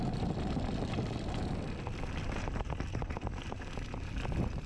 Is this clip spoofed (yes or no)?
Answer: no